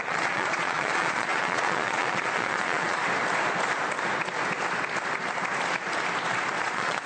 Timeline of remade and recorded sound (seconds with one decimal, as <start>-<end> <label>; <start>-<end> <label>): 0.0-3.0 remade; 3.0-6.6 recorded; 6.6-7.1 remade